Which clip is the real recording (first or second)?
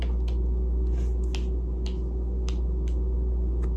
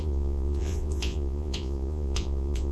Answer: first